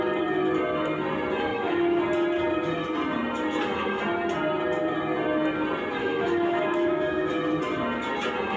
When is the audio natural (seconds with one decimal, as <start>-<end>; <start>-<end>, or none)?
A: 0.0-1.5; 2.0-6.0; 7.3-8.6